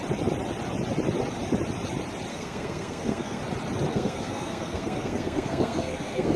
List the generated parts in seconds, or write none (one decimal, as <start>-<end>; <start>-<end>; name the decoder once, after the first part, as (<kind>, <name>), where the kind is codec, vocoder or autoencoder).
2.3-3.4 (codec, SNAC); 3.9-6.4